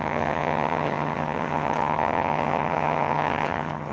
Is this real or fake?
fake